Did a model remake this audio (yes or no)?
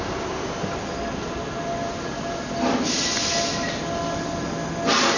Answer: no